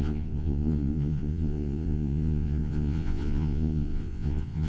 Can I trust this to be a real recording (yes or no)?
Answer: no